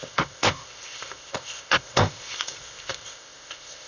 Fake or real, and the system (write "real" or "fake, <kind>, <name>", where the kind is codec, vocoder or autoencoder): fake, codec, ZipCodec